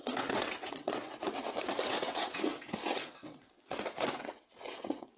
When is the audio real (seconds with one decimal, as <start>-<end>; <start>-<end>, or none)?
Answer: none